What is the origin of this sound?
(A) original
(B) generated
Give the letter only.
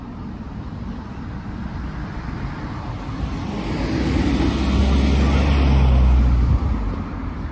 A